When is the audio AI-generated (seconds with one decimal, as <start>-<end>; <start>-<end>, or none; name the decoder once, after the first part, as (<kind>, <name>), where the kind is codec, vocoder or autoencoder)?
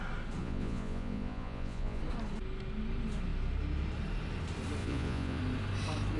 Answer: 0.4-2.0 (vocoder, Vocos); 4.8-5.4